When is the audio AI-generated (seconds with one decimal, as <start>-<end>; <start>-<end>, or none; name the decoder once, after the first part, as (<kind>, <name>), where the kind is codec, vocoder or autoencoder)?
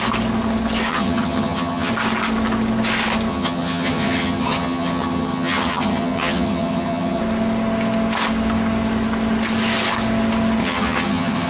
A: 0.9-1.9 (vocoder, HiFi-GAN); 3.3-7.2; 10.6-11.5